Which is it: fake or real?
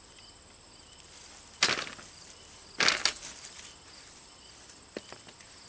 real